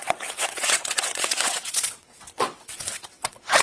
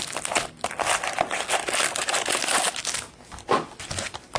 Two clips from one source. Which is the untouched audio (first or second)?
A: second